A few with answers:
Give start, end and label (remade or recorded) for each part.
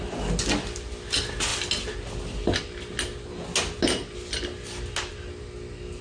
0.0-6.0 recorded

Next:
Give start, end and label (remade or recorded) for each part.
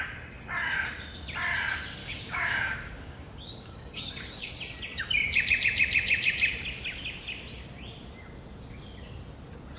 0.0-2.0 recorded; 2.0-4.5 remade; 4.5-9.8 recorded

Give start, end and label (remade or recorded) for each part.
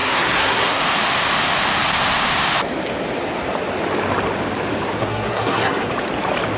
0.0-0.8 remade; 0.8-5.0 recorded; 5.0-5.9 remade; 5.9-6.6 recorded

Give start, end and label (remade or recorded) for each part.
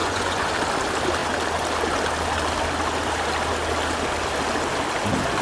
0.0-0.5 remade; 0.5-5.4 recorded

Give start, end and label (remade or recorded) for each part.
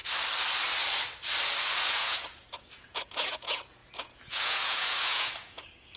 0.0-1.9 recorded; 1.9-6.0 remade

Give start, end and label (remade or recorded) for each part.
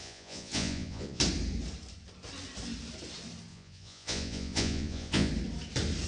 0.0-1.2 remade; 1.2-3.5 recorded; 3.5-5.3 remade; 5.3-6.1 recorded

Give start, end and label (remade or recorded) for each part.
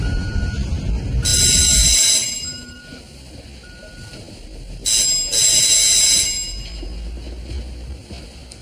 0.0-1.3 recorded; 1.3-2.8 remade; 2.8-8.6 recorded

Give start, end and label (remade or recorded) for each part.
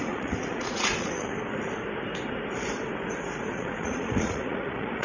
0.0-1.3 remade; 1.3-3.5 recorded; 3.5-5.0 remade